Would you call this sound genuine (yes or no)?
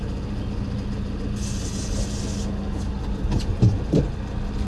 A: yes